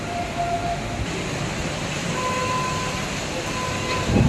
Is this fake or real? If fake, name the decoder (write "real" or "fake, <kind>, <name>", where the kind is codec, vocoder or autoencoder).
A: real